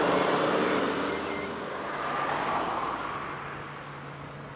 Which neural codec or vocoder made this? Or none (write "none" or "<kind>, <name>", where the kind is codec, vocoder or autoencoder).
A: none